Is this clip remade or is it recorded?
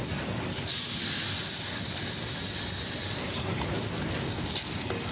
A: recorded